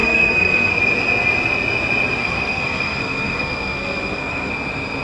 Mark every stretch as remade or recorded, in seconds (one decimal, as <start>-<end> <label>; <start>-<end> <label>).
0.0-0.7 remade; 0.7-2.2 recorded; 2.2-4.5 remade; 4.5-5.0 recorded